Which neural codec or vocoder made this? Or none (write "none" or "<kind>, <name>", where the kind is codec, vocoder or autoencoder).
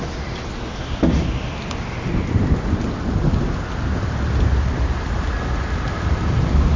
none